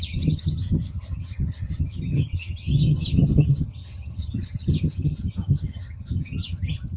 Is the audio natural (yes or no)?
no